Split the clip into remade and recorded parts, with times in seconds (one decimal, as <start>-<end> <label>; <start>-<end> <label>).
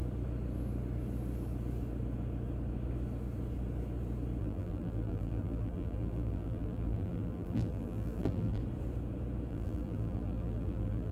0.0-4.4 recorded; 4.4-8.6 remade; 8.6-9.5 recorded; 9.5-11.1 remade